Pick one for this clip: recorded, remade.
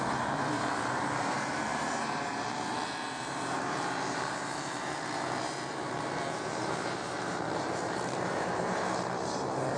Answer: remade